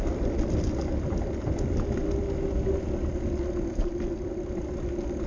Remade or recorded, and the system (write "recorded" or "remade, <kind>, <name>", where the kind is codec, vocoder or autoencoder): recorded